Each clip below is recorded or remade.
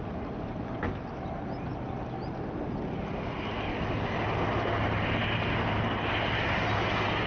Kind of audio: recorded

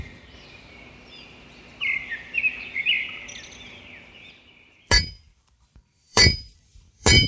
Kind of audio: remade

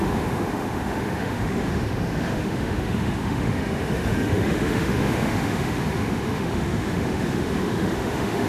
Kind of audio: remade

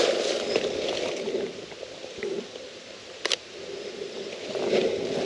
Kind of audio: remade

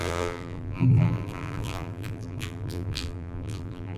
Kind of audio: remade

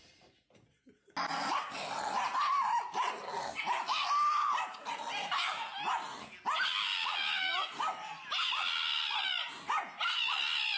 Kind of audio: recorded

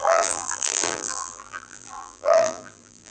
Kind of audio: remade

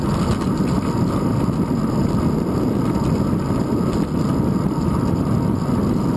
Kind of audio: recorded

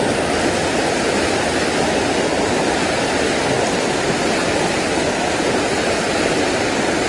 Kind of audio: recorded